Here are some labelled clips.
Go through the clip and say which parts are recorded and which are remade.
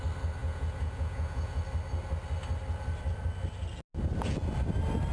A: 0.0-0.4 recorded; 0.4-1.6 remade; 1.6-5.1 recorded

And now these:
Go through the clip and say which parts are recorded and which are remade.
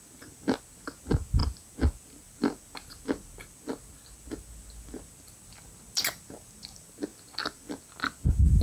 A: 0.0-8.6 recorded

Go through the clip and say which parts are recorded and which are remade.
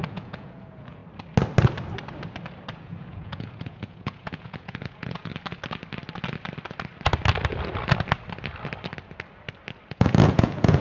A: 0.0-1.0 remade; 1.0-2.7 recorded; 2.7-5.3 remade; 5.3-9.9 recorded; 9.9-10.8 remade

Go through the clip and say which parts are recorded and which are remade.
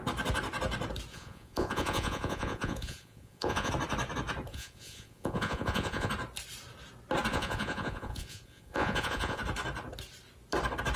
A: 0.0-1.1 recorded; 1.1-3.7 remade; 3.7-4.5 recorded; 4.5-6.1 remade; 6.1-7.3 recorded; 7.3-9.4 remade; 9.4-11.0 recorded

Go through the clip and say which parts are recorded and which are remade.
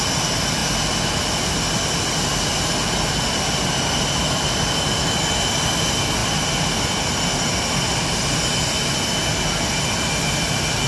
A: 0.0-10.9 recorded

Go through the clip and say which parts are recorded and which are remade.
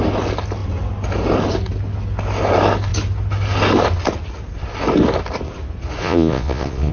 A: 0.0-6.0 recorded; 6.0-6.9 remade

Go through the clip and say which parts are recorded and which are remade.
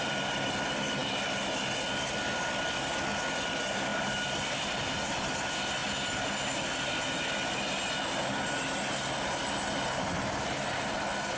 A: 0.0-11.4 recorded